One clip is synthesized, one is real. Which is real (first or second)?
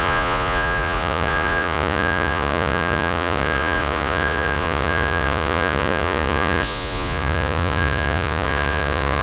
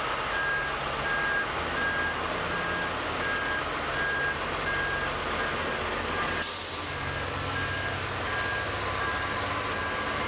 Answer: second